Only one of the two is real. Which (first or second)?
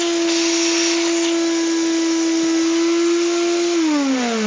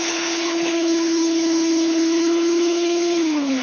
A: first